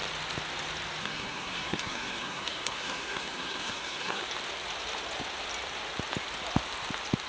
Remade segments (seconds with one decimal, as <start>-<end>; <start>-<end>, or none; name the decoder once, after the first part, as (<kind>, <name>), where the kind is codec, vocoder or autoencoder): 1.0-4.2 (codec, SNAC)